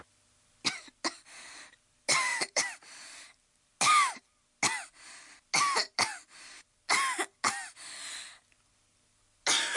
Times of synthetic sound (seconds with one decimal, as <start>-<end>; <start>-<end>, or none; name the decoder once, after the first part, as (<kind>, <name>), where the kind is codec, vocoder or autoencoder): 2.3-3.7 (vocoder, BigVGAN v2)